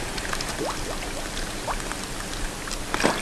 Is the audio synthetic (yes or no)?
no